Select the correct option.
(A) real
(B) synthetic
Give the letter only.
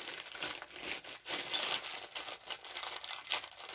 A